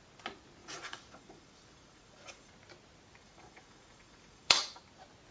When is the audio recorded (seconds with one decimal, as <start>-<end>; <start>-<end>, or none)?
0.0-0.6; 2.5-3.2; 4.8-5.3